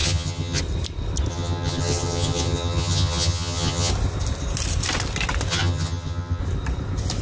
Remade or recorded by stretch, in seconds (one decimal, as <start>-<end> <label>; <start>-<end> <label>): 0.0-0.6 remade; 0.6-1.3 recorded; 1.3-3.9 remade; 3.9-5.5 recorded; 5.5-6.4 remade; 6.4-7.2 recorded